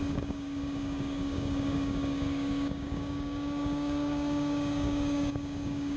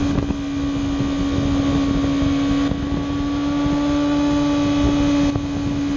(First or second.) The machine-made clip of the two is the first